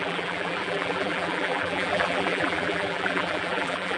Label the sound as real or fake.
fake